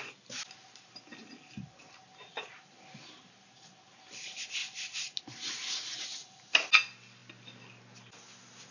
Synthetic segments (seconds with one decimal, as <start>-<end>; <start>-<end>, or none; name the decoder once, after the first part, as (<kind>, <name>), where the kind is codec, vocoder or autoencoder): none